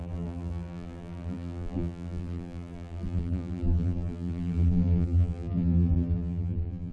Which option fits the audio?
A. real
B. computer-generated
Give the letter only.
B